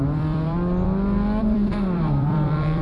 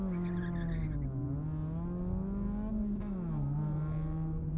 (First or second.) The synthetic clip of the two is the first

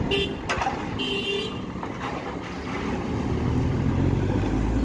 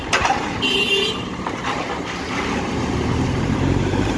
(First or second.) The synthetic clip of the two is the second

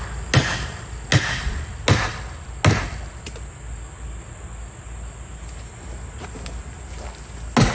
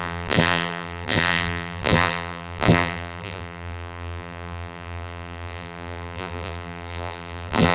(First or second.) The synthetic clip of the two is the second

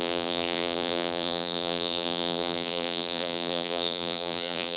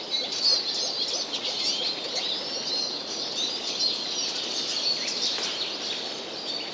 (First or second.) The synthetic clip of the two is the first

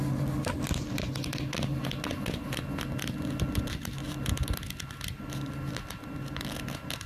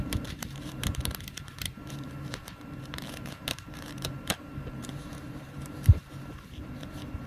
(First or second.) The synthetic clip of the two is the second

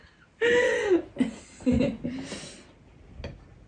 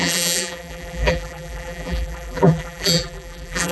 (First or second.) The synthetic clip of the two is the second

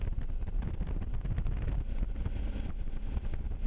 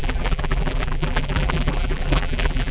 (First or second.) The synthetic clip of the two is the second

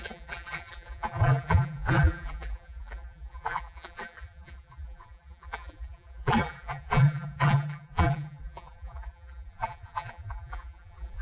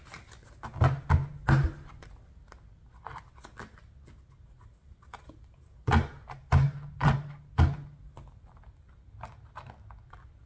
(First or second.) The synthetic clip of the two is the first